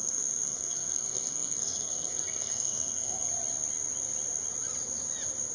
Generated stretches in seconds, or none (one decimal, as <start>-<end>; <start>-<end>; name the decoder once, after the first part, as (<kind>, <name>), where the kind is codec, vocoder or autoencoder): 0.0-3.3 (codec, SNAC)